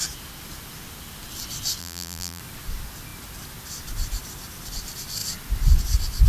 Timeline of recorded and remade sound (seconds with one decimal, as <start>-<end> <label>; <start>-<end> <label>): 0.0-1.8 recorded; 1.8-2.4 remade; 2.4-6.3 recorded